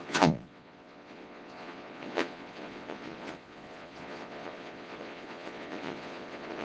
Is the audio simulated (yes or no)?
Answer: yes